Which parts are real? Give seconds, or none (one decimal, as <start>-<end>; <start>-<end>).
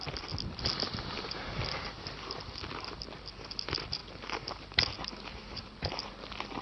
0.0-6.6